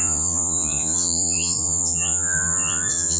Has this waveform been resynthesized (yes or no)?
yes